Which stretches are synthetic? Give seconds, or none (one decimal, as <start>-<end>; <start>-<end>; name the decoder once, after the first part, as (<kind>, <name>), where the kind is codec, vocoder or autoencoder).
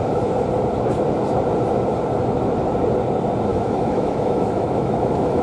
3.5-5.4 (autoencoder, DAC-VAE)